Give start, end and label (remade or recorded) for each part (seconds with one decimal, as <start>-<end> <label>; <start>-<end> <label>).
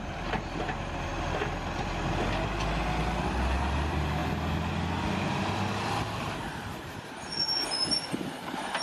0.0-1.1 remade; 1.1-3.0 recorded; 3.0-4.2 remade; 4.2-5.9 recorded; 5.9-8.8 remade